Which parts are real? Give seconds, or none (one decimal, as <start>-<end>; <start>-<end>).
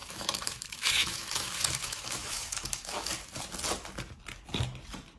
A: 3.1-5.2